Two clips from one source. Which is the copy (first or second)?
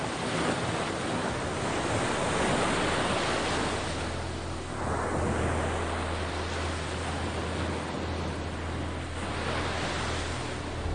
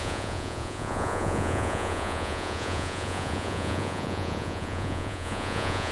second